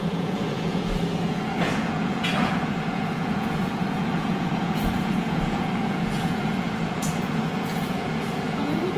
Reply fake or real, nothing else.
fake